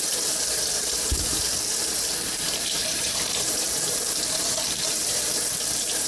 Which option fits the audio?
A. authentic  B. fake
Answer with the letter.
B